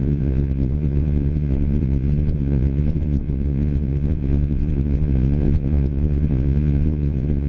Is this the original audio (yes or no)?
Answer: no